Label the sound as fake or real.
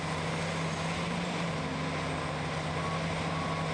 real